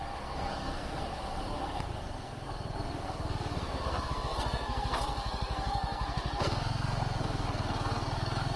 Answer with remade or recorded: remade